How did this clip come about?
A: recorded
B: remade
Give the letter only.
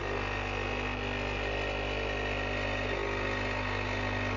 A